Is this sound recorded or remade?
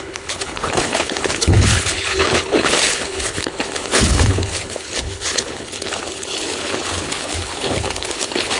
remade